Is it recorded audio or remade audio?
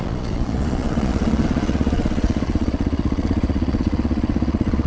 remade